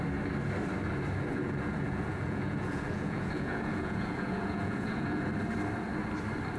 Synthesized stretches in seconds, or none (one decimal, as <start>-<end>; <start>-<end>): 1.3-5.3